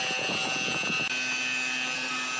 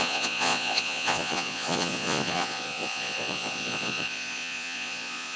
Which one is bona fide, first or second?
first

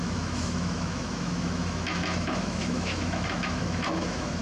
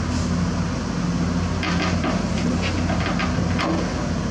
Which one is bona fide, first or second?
second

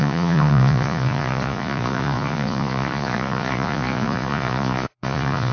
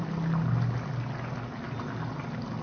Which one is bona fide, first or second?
second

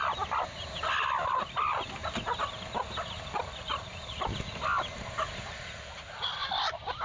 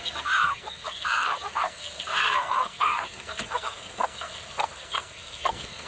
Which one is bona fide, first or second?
first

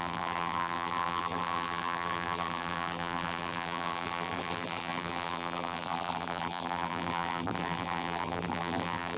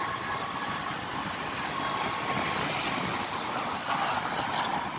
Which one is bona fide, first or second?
second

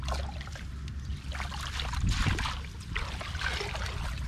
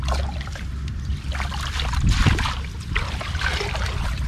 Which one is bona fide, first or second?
first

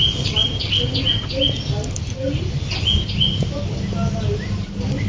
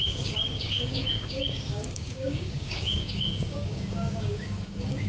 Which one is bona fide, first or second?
first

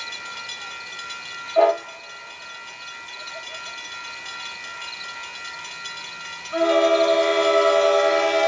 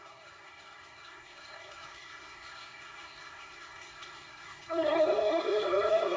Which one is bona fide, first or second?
first